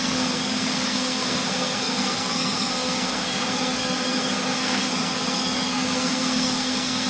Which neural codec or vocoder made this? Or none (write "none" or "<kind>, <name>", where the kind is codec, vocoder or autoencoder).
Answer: codec, SNAC